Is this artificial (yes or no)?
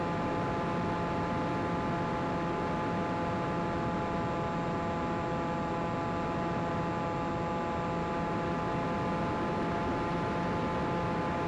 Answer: no